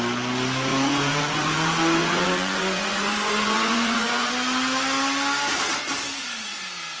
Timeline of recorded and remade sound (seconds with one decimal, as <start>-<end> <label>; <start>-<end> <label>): 0.0-0.7 recorded; 0.7-4.3 remade; 4.3-7.0 recorded